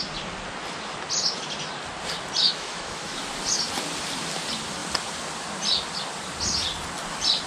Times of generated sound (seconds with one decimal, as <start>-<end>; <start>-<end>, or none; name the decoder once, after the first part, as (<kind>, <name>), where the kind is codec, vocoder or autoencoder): 2.4-3.2 (autoencoder, DAC-VAE)